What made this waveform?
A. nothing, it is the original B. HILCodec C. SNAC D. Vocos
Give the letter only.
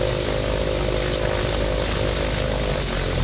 A